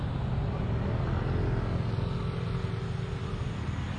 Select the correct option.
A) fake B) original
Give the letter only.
B